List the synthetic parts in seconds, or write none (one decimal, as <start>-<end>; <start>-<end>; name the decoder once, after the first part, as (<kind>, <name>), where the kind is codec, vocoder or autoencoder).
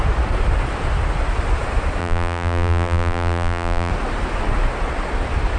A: 2.0-3.9 (vocoder, BigVGAN v2)